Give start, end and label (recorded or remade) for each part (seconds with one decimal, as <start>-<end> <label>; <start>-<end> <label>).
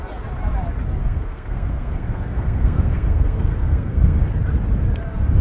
0.0-1.0 recorded; 1.0-4.2 remade; 4.2-5.4 recorded